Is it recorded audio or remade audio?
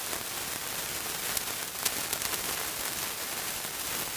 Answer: recorded